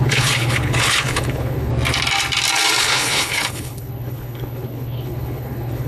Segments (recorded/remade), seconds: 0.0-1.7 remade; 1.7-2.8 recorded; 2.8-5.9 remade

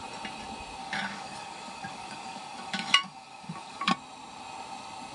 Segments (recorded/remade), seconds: 0.0-0.8 recorded; 0.8-3.9 remade; 3.9-5.1 recorded

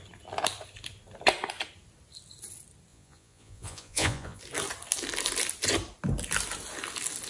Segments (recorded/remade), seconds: 0.0-2.9 recorded; 2.9-4.4 remade; 4.4-7.3 recorded

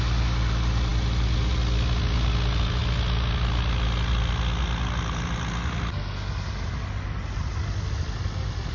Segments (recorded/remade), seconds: 0.0-8.7 recorded